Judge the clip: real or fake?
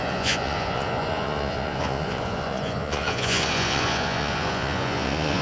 fake